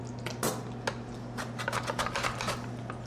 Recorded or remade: recorded